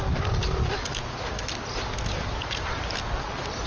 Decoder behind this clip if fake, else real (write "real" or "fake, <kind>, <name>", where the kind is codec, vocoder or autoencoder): real